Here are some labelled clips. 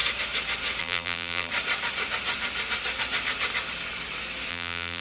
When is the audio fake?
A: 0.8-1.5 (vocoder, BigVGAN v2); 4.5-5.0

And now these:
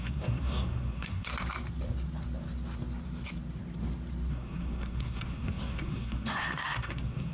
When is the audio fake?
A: 0.0-1.3 (codec, SNAC); 4.3-7.3

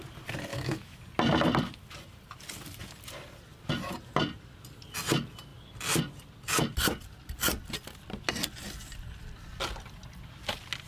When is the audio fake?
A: 0.5-1.0 (autoencoder, DAC-VAE)